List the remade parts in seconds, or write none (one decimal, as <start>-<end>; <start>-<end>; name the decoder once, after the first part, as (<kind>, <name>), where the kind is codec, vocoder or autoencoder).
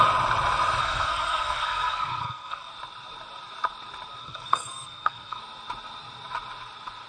0.8-2.7 (codec, SNAC); 4.2-5.4